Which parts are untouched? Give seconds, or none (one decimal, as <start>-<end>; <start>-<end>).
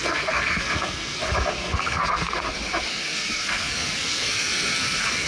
1.2-1.6; 2.4-2.9